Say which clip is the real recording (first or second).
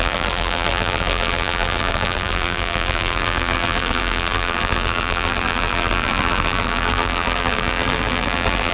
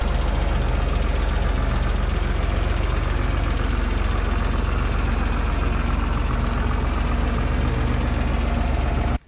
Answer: second